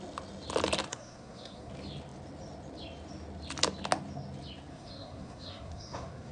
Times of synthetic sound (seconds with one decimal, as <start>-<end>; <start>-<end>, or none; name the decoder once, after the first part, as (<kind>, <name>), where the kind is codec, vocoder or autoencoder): 0.9-1.7 (codec, SNAC); 4.7-6.3